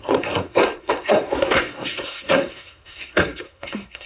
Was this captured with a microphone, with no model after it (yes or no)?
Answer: no